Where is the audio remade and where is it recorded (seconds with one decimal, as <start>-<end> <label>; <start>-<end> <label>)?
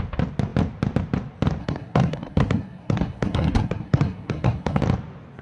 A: 0.0-1.6 recorded; 1.6-4.8 remade; 4.8-5.4 recorded